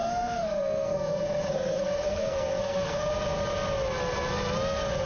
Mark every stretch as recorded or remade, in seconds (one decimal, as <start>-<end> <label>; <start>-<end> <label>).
0.0-3.1 remade; 3.1-5.1 recorded